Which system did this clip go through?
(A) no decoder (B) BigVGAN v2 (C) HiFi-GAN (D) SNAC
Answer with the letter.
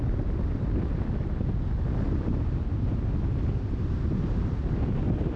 A